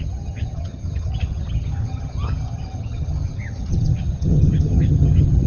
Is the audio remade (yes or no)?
yes